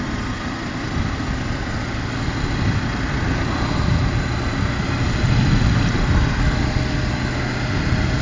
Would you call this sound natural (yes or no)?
yes